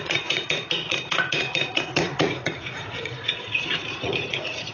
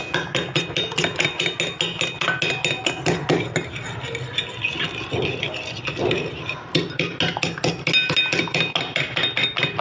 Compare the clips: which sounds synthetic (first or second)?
first